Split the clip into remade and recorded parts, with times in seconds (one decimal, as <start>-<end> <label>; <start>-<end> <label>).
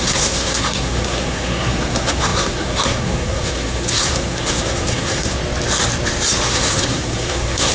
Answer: 0.0-5.4 remade; 5.4-6.5 recorded; 6.5-7.7 remade